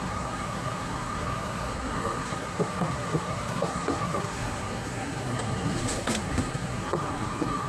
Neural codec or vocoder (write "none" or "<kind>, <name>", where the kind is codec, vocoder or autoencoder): codec, SNAC